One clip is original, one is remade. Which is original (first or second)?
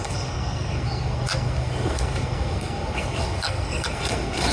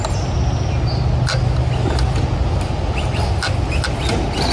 second